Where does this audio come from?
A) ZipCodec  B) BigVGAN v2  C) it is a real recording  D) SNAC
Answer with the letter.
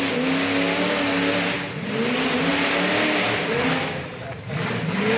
C